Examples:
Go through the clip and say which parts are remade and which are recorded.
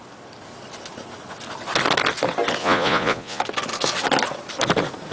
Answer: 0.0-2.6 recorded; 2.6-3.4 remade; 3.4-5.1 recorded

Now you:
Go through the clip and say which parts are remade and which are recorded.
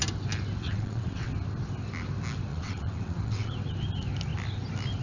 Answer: 0.0-0.6 recorded; 0.6-1.3 remade; 1.3-2.5 recorded; 2.5-3.5 remade; 3.5-5.0 recorded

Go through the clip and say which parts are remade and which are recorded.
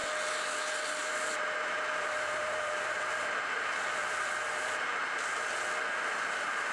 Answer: 0.0-1.0 recorded; 1.0-5.0 remade; 5.0-6.7 recorded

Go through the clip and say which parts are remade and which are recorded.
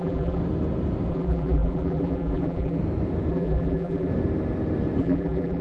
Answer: 0.0-0.4 remade; 0.4-1.1 recorded; 1.1-2.8 remade; 2.8-3.3 recorded; 3.3-4.1 remade; 4.1-5.0 recorded; 5.0-5.6 remade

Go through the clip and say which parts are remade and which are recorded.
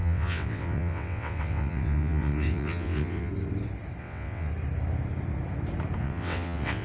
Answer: 0.0-3.3 remade; 3.3-4.0 recorded; 4.0-4.5 remade; 4.5-6.0 recorded; 6.0-6.8 remade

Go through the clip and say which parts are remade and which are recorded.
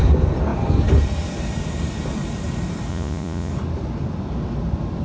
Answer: 0.0-2.9 recorded; 2.9-3.5 remade; 3.5-5.0 recorded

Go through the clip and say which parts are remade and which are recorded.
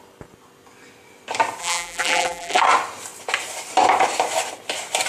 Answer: 0.0-1.6 recorded; 1.6-2.6 remade; 2.6-5.1 recorded